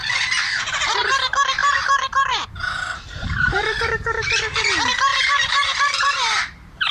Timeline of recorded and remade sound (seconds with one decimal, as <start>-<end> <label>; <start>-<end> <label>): 0.0-6.9 remade